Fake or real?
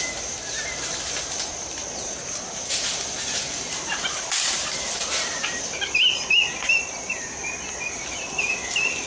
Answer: fake